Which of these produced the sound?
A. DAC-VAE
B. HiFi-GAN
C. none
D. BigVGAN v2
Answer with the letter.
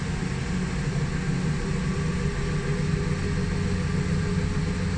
C